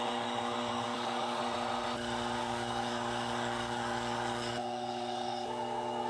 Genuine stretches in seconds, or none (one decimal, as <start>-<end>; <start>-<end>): 1.4-2.4